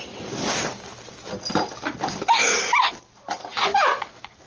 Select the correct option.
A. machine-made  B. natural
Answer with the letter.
B